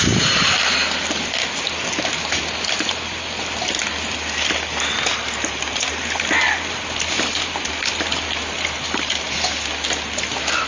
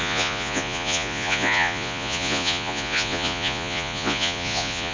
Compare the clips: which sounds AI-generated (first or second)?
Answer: second